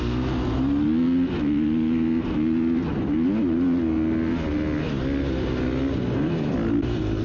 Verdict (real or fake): real